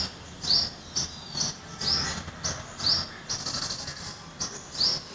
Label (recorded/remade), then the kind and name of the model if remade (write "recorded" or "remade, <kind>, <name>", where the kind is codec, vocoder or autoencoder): recorded